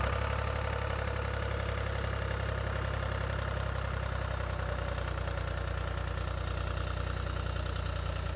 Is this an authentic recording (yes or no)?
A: yes